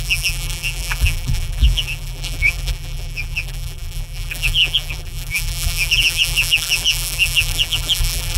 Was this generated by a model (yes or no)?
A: yes